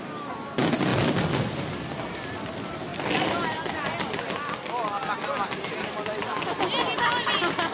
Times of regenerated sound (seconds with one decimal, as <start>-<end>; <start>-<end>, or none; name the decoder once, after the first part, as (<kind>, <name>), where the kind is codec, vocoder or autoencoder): none